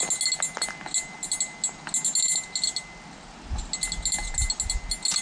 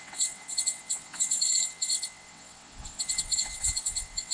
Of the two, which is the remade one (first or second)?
second